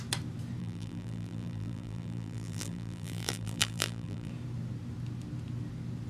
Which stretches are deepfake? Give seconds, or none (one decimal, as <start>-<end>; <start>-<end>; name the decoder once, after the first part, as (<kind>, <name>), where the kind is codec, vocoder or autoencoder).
0.6-4.3 (vocoder, BigVGAN v2)